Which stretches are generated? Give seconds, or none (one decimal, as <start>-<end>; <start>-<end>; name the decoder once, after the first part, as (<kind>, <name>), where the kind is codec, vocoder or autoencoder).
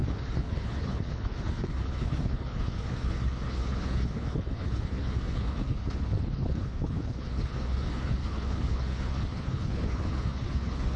0.0-11.0 (codec, HILCodec)